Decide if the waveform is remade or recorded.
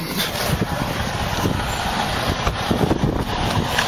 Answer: remade